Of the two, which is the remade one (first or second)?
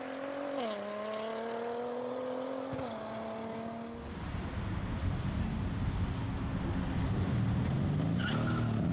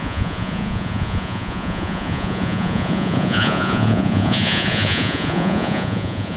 second